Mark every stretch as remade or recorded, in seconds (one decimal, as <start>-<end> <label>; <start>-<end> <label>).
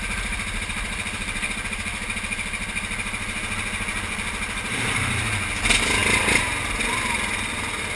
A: 0.0-8.0 recorded